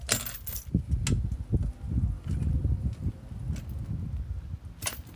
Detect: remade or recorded recorded